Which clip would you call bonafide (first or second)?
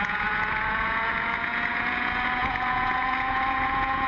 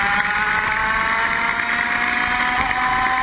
second